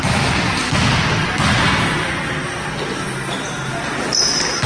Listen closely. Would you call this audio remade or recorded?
recorded